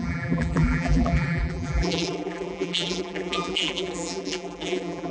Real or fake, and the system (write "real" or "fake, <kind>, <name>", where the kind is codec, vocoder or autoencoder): fake, vocoder, BigVGAN v2